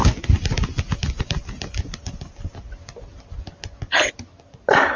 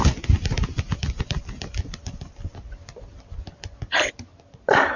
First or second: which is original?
first